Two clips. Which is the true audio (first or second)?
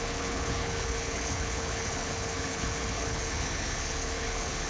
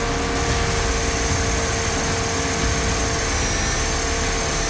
second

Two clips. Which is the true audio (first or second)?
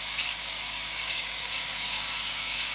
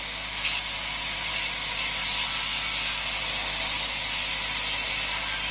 second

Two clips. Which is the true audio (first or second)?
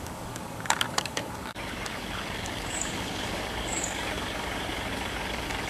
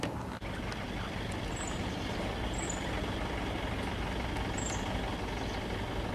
second